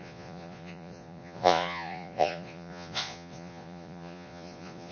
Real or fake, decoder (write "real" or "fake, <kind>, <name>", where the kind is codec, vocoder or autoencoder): fake, vocoder, Vocos